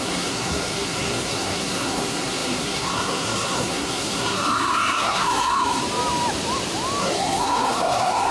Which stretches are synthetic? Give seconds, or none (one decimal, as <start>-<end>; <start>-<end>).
0.0-5.8; 7.0-8.3